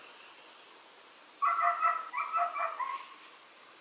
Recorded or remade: recorded